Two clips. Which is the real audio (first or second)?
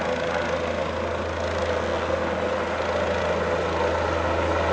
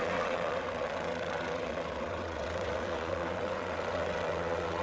first